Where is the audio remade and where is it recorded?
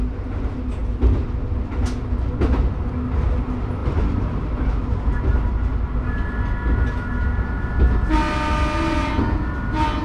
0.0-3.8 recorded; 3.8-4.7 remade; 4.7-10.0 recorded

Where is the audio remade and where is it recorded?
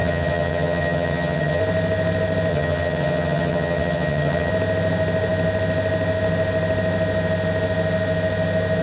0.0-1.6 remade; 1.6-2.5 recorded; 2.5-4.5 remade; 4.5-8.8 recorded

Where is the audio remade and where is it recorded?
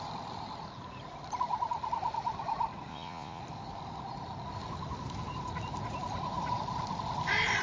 0.0-2.9 recorded; 2.9-3.4 remade; 3.4-7.6 recorded